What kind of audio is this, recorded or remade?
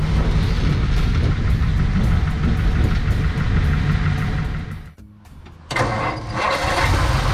recorded